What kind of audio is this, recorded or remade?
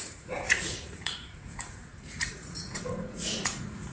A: remade